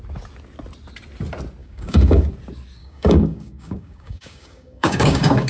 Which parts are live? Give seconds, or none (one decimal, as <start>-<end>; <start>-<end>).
0.0-1.6; 2.2-2.8